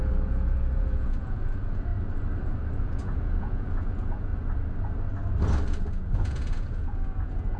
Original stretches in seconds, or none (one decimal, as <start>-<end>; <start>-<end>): 1.9-2.8; 4.3-5.9